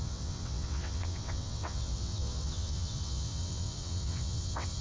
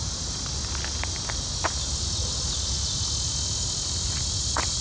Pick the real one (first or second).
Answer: second